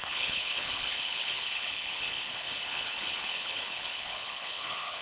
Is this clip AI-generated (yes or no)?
yes